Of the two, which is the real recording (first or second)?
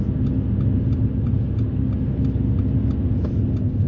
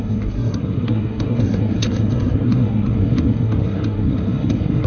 first